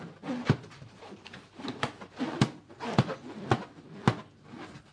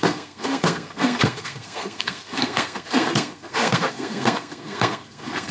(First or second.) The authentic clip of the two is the first